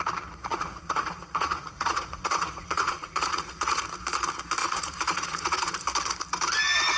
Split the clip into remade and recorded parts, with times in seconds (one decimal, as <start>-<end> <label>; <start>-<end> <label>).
0.0-0.5 recorded; 0.5-3.8 remade; 3.8-4.6 recorded; 4.6-5.7 remade; 5.7-7.0 recorded